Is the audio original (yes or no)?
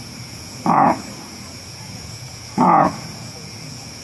no